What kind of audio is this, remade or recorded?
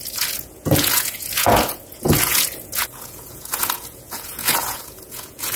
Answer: remade